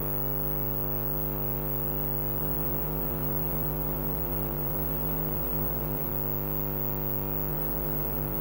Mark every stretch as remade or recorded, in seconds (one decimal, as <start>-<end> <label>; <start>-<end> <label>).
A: 0.0-2.4 recorded; 2.4-6.1 remade; 6.1-7.5 recorded; 7.5-8.4 remade